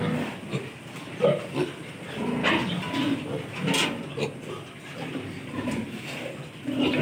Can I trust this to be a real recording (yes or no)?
yes